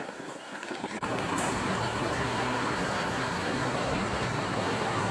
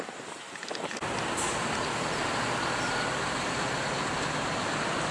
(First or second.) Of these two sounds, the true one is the second